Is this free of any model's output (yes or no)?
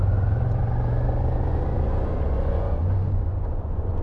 no